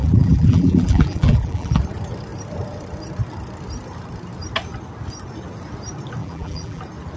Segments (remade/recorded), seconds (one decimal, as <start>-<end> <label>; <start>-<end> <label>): 0.0-1.8 remade; 1.8-6.2 recorded; 6.2-6.8 remade; 6.8-7.2 recorded